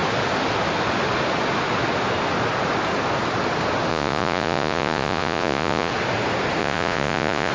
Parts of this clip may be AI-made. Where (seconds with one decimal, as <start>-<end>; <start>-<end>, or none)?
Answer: 3.9-5.9; 6.6-7.5